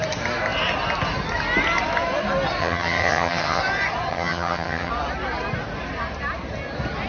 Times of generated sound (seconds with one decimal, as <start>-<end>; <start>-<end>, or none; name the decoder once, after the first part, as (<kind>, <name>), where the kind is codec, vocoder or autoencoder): 2.6-3.6 (vocoder, HiFi-GAN); 4.1-4.9